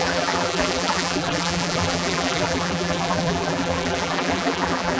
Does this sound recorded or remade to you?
remade